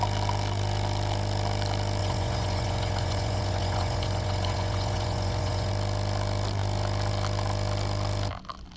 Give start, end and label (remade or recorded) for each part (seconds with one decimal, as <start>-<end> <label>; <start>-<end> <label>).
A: 0.0-2.0 recorded; 2.0-5.7 remade; 5.7-8.8 recorded